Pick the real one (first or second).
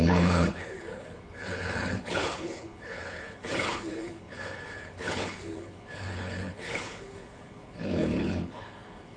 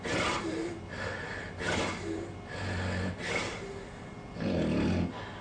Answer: second